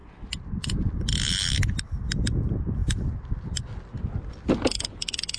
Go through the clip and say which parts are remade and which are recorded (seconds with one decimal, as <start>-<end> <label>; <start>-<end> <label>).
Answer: 0.0-5.4 recorded